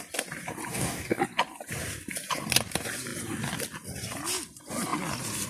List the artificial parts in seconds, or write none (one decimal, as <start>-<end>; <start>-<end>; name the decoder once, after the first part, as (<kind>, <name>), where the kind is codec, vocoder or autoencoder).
0.7-1.2 (codec, DAC)